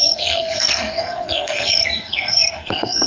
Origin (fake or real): fake